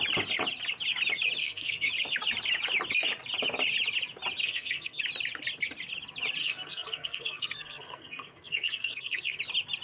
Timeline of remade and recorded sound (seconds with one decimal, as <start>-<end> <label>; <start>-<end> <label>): 0.0-1.4 recorded; 1.4-1.9 remade; 1.9-4.4 recorded; 4.4-5.0 remade; 5.0-6.4 recorded; 6.4-9.4 remade; 9.4-9.8 recorded

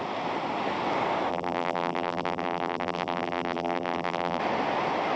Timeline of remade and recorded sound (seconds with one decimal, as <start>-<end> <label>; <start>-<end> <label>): 0.0-1.3 recorded; 1.3-4.4 remade; 4.4-5.2 recorded

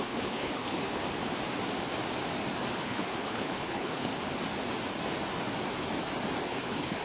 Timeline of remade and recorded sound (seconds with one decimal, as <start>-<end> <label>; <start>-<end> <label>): 0.0-1.0 remade; 1.0-2.7 recorded; 2.7-4.1 remade; 4.1-6.5 recorded; 6.5-7.0 remade

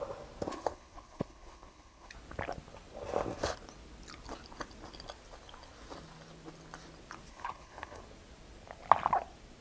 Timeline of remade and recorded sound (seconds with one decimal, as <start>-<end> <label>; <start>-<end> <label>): 0.0-0.5 recorded; 0.5-2.1 remade; 2.1-7.3 recorded; 7.3-8.0 remade; 8.0-9.6 recorded

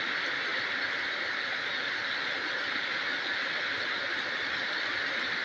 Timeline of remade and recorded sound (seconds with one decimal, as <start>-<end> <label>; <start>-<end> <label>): 0.0-0.5 remade; 0.5-3.7 recorded; 3.7-5.4 remade

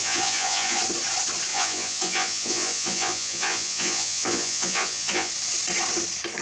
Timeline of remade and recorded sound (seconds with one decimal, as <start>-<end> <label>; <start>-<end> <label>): 0.0-0.8 remade; 0.8-1.5 recorded; 1.5-5.3 remade; 5.3-6.4 recorded

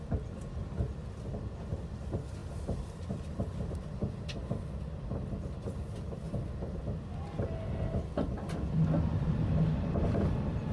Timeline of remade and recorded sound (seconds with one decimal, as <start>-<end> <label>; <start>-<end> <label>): 0.0-10.7 recorded

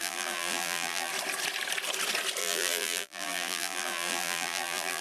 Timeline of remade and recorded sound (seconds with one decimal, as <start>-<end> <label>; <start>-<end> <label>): 0.0-1.1 remade; 1.1-2.4 recorded; 2.4-5.0 remade